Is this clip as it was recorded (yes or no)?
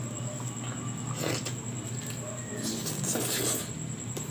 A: yes